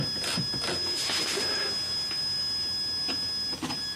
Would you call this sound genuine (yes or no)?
yes